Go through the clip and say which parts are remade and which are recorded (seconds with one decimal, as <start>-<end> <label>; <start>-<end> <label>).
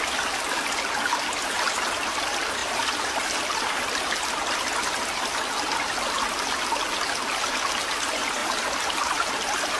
0.0-2.6 recorded; 2.6-3.8 remade; 3.8-8.4 recorded; 8.4-9.3 remade; 9.3-9.8 recorded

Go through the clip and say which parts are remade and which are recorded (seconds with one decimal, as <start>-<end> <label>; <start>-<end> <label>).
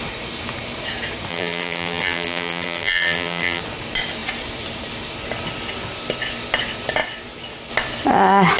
0.0-1.3 recorded; 1.3-3.6 remade; 3.6-8.6 recorded